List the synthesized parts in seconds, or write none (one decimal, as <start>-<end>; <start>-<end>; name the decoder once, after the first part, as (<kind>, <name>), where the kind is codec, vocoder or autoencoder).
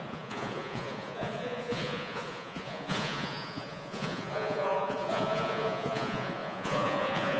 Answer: 0.0-7.4 (vocoder, Vocos)